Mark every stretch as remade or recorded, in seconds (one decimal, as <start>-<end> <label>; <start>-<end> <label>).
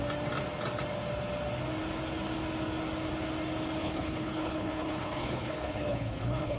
0.0-3.8 recorded; 3.8-6.6 remade